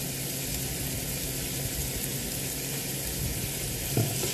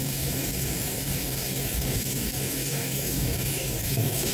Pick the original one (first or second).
first